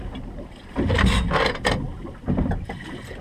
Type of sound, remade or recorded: recorded